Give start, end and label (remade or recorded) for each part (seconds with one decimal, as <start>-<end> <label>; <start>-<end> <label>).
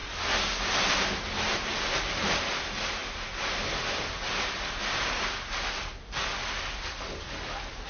0.0-7.9 recorded